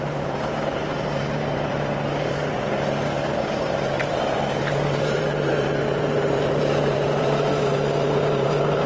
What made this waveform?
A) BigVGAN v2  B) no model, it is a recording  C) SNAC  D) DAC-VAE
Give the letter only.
A